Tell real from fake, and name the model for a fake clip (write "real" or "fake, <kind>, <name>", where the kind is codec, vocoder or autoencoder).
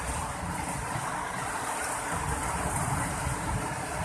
real